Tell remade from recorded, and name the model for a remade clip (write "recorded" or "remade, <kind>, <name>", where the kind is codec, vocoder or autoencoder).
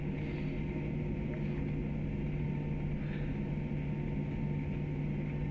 recorded